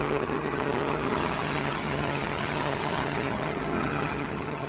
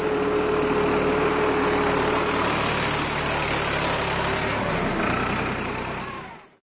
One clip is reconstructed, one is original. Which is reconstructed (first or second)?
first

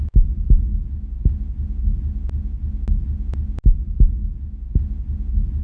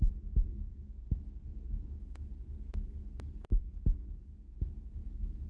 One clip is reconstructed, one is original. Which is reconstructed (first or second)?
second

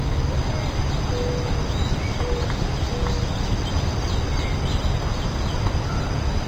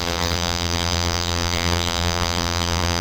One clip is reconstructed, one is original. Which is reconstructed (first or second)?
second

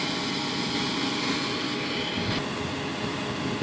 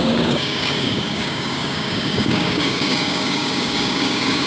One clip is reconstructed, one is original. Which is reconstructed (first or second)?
second